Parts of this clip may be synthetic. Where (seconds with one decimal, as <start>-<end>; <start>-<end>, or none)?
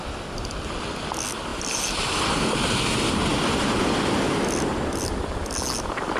1.5-2.3; 3.3-3.9